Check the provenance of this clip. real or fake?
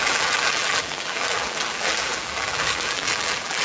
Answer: fake